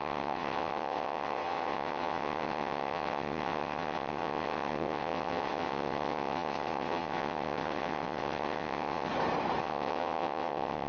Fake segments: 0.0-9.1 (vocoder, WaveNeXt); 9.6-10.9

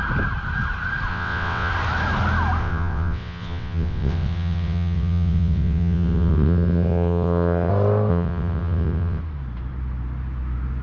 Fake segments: 1.1-1.7 (vocoder, WaveNeXt); 2.6-7.7; 8.1-9.2

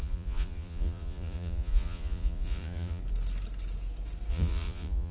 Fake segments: 0.0-3.0 (vocoder, Vocos); 4.3-5.1

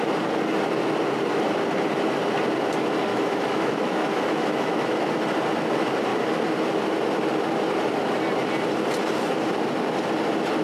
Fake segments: 3.1-5.1 (autoencoder, DAC-VAE)

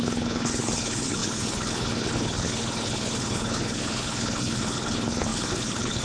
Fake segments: 0.0-6.0 (codec, HILCodec)